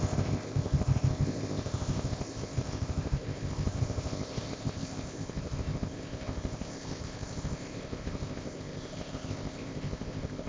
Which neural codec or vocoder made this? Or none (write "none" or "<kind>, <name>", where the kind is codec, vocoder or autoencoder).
codec, ZipCodec